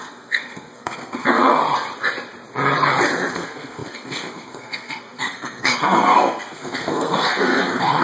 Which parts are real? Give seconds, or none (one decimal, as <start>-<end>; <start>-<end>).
1.6-3.3